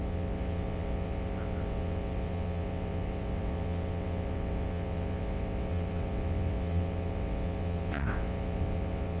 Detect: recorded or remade remade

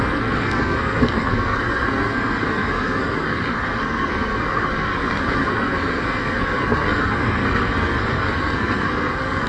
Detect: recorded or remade remade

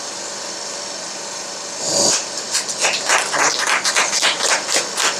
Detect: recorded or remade recorded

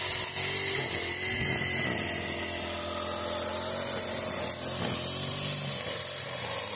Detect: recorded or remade recorded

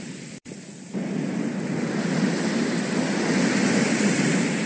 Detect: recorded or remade recorded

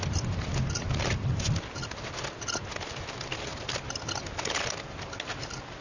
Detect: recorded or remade recorded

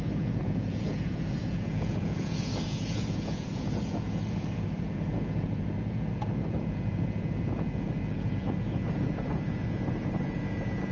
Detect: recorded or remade remade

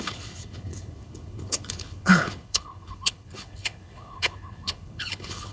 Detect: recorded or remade remade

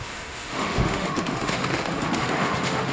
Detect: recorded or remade remade